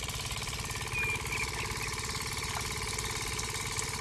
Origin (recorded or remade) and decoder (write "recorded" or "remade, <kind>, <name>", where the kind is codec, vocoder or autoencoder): recorded